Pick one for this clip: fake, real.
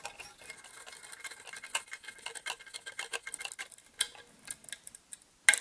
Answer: real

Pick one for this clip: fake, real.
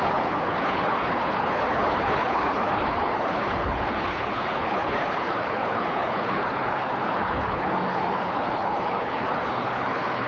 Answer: fake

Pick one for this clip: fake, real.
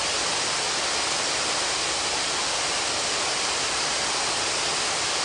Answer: real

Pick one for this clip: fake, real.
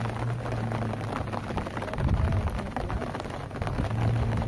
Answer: real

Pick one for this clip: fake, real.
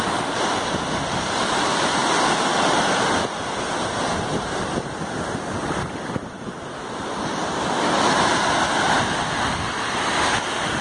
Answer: real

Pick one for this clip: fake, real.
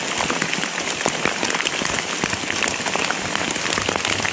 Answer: real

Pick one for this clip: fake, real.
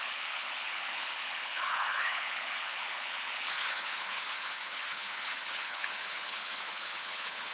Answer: fake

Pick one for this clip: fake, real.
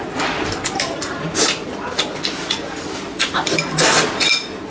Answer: real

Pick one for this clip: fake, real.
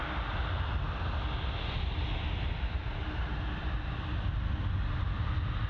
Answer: real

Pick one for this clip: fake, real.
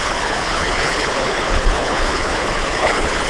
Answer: fake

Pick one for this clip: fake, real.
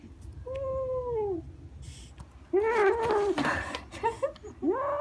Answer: real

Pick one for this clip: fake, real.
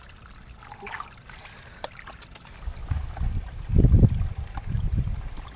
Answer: real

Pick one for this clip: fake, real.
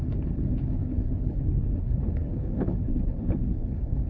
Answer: fake